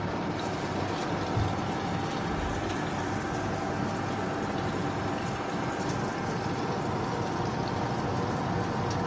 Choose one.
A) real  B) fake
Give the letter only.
A